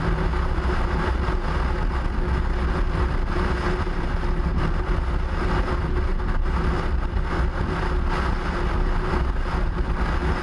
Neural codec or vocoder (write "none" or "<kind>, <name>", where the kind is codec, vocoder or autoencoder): none